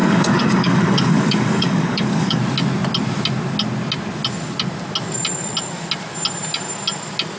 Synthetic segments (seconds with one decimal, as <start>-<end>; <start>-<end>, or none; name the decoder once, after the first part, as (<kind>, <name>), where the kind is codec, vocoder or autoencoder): 0.0-2.4 (codec, DAC)